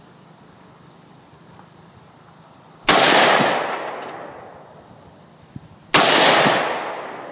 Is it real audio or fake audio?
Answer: real